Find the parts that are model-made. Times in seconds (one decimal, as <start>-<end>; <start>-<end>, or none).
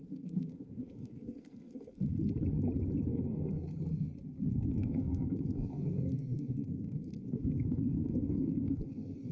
0.0-2.1; 3.1-3.7; 4.5-9.3